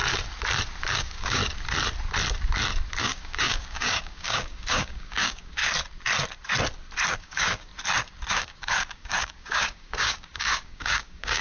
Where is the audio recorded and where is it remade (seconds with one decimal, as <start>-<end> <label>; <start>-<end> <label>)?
0.0-0.9 recorded; 0.9-1.4 remade; 1.4-3.0 recorded; 3.0-5.6 remade; 5.6-7.2 recorded; 7.2-7.7 remade; 7.7-8.3 recorded; 8.3-11.4 remade